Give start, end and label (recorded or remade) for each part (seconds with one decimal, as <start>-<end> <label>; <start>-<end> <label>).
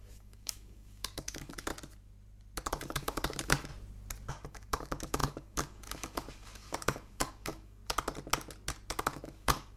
0.0-1.7 remade; 1.7-2.7 recorded; 2.7-3.7 remade; 3.7-4.3 recorded; 4.3-7.8 remade; 7.8-8.9 recorded; 8.9-9.8 remade